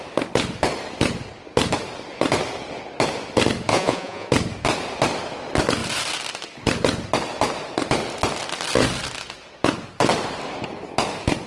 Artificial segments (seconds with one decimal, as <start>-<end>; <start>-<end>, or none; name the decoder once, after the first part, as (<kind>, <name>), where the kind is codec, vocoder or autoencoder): 3.7-4.3 (vocoder, Vocos)